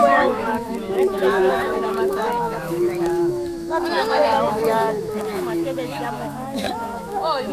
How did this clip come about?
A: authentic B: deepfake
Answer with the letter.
B